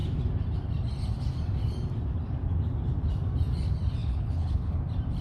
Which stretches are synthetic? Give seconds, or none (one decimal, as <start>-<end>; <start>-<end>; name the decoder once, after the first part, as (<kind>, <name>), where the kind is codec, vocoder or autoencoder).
4.0-4.8 (codec, HILCodec)